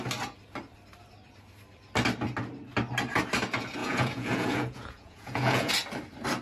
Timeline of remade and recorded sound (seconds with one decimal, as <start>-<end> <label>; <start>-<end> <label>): 0.0-3.8 recorded; 3.8-5.7 remade; 5.7-6.4 recorded

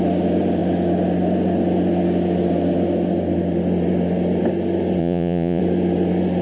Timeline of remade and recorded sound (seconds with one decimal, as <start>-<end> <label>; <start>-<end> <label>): 0.0-5.0 recorded; 5.0-5.6 remade; 5.6-6.4 recorded

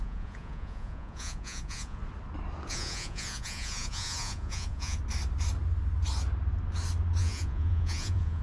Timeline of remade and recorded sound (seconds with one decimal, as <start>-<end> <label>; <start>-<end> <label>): 0.0-2.0 remade; 2.0-2.7 recorded; 2.7-5.0 remade; 5.0-7.2 recorded; 7.2-8.4 remade